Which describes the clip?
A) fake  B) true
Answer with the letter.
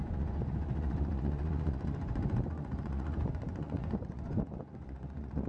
A